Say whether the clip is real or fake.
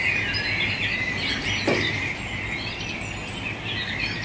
real